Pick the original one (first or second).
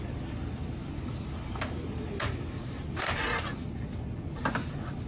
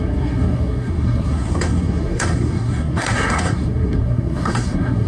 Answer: first